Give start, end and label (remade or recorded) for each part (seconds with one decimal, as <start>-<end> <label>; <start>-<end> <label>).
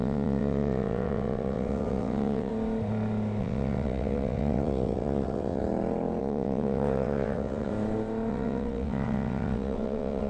0.0-2.5 remade; 2.5-3.4 recorded; 3.4-5.6 remade; 5.6-6.2 recorded; 6.2-7.7 remade; 7.7-8.3 recorded; 8.3-10.3 remade